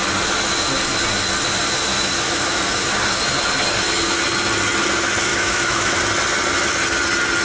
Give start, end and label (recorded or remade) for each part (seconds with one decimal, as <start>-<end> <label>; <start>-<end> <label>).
0.0-1.9 recorded; 1.9-2.6 remade; 2.6-5.3 recorded; 5.3-6.0 remade; 6.0-7.4 recorded